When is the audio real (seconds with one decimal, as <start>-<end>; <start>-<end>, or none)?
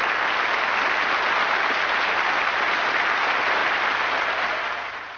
0.0-5.2